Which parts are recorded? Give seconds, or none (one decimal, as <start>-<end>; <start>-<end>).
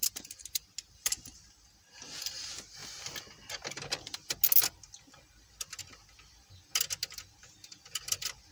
0.0-8.5